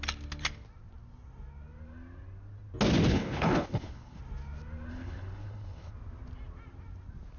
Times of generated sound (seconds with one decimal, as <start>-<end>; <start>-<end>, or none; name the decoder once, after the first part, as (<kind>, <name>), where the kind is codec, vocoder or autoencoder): 3.1-4.2 (codec, HILCodec); 4.9-5.9